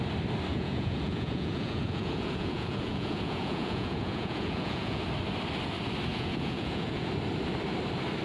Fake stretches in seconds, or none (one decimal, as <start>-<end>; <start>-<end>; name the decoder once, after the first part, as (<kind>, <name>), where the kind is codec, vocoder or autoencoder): 0.5-5.0 (vocoder, Vocos); 6.1-7.1